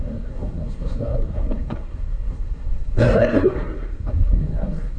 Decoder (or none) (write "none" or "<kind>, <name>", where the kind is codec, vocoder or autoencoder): codec, SNAC